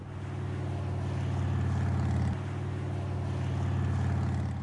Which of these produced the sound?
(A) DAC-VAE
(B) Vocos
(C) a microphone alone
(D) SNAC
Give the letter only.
C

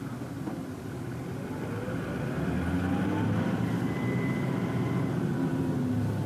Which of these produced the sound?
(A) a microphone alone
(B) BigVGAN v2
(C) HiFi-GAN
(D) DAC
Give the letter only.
A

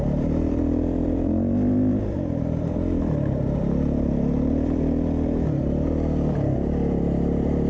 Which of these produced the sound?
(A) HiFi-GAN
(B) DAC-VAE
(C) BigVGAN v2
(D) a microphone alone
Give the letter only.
C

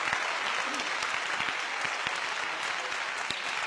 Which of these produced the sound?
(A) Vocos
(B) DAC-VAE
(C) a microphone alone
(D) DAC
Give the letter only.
C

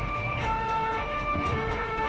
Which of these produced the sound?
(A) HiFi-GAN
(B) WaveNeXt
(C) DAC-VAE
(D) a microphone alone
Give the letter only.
C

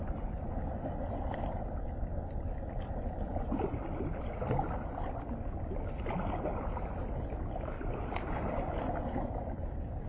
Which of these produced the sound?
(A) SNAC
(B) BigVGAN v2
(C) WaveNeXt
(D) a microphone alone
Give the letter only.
D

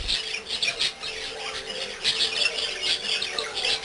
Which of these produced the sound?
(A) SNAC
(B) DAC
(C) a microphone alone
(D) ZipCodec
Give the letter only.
C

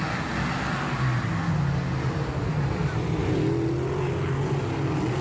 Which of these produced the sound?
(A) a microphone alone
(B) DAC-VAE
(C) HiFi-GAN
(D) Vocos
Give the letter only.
A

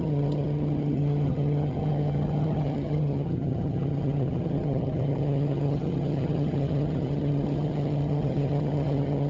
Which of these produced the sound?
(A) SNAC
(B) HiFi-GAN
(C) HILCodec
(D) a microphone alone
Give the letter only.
B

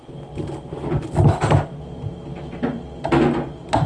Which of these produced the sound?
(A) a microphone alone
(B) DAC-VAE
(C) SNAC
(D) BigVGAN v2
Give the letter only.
A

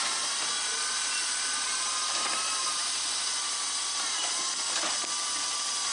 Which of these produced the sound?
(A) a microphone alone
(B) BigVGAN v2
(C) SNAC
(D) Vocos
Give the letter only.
A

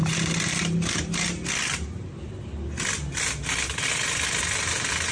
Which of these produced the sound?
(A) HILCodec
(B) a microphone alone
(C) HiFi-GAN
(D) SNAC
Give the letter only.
B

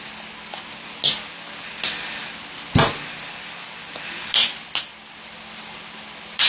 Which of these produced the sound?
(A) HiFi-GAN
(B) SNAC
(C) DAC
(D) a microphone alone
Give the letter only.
D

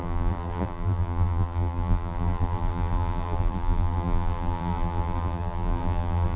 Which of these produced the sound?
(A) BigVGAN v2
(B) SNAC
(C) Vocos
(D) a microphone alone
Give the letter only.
A